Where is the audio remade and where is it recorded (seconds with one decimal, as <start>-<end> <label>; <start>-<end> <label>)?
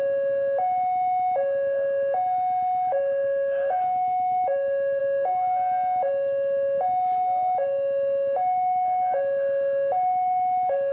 0.0-2.9 recorded; 2.9-5.0 remade; 5.0-10.9 recorded